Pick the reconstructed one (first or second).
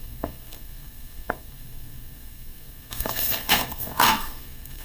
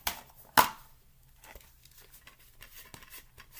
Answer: first